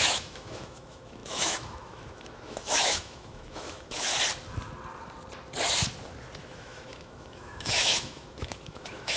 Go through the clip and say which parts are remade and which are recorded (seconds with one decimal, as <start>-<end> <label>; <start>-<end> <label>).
0.0-4.1 remade; 4.1-6.4 recorded; 6.4-9.2 remade